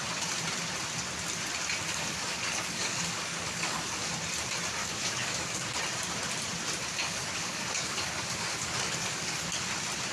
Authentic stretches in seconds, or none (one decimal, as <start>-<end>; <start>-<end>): 0.0-1.8; 4.1-4.8; 5.8-7.0; 9.7-10.1